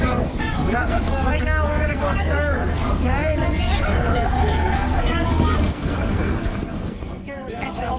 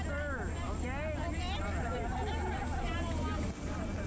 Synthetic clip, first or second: first